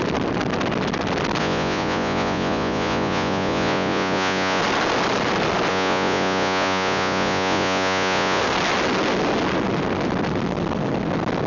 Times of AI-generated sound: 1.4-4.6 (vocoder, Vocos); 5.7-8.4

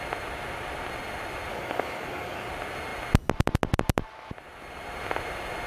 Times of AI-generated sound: 1.5-2.5 (codec, DAC)

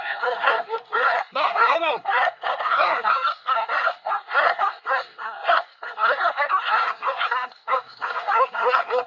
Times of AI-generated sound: 0.0-9.1 (codec, SNAC)

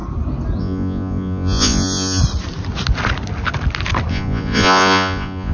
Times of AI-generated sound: 0.6-2.2 (vocoder, Vocos); 4.1-5.5

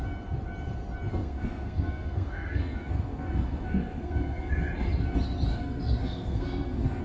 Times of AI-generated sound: 1.1-4.5 (codec, SNAC); 5.5-7.0

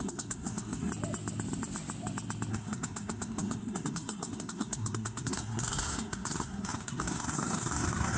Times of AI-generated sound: 0.0-0.9 (codec, SNAC); 2.5-8.2

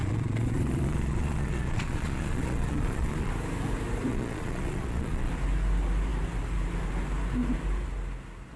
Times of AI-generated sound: 0.0-3.3 (vocoder, Vocos); 4.1-5.3

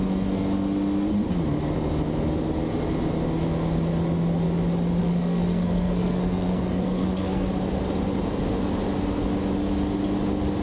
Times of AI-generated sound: 5.0-7.5 (codec, SNAC)